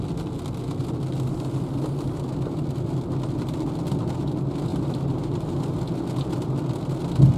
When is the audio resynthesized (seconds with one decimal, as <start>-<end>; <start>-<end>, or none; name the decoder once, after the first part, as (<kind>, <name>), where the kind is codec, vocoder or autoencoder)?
4.7-5.8 (vocoder, BigVGAN v2)